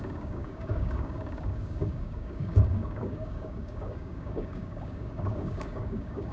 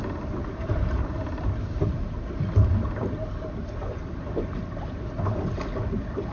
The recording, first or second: second